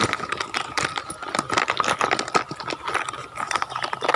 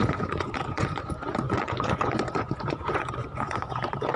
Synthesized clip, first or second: second